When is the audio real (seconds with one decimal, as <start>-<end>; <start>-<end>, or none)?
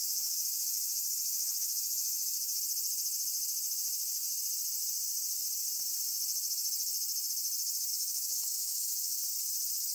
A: 2.6-7.9; 9.2-9.9